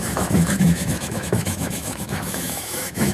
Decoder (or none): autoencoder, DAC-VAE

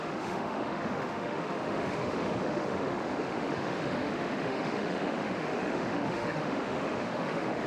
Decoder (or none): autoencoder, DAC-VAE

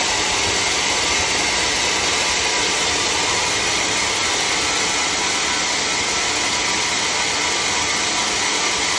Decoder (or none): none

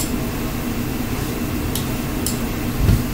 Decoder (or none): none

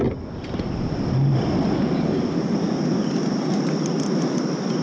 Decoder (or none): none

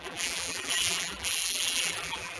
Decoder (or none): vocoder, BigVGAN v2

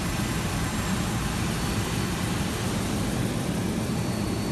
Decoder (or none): none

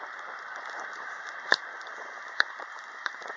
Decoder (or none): vocoder, BigVGAN v2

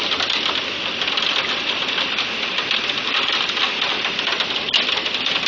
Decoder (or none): none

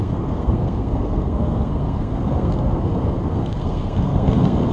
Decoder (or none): codec, SNAC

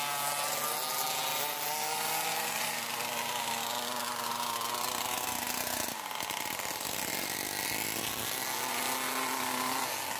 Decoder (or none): none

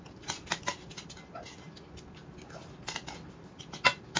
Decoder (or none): none